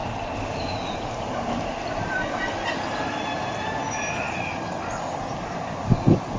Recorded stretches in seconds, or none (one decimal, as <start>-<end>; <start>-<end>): 0.0-6.4